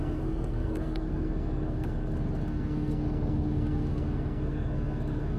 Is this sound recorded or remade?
remade